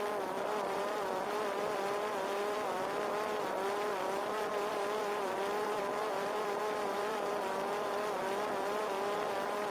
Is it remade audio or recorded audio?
remade